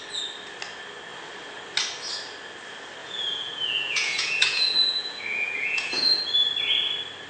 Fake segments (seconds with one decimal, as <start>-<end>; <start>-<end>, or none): 3.0-6.2